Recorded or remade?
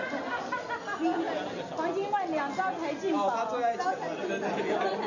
recorded